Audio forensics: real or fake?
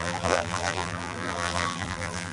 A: fake